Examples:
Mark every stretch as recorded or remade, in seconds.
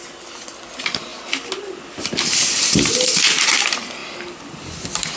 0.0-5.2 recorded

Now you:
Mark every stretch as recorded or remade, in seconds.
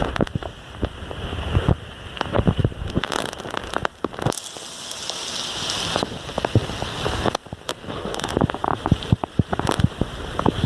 0.0-2.6 remade; 2.6-3.2 recorded; 3.2-3.8 remade; 3.8-7.3 recorded; 7.3-7.7 remade; 7.7-8.3 recorded; 8.3-10.7 remade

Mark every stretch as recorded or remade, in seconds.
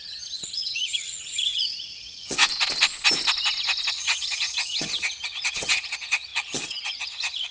0.0-2.4 remade; 2.4-3.9 recorded; 3.9-7.5 remade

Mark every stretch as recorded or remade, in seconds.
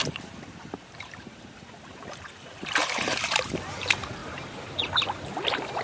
0.0-5.8 remade